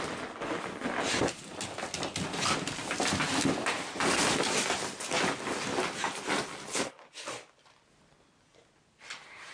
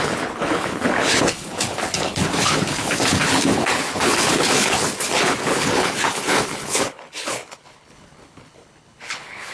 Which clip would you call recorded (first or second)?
first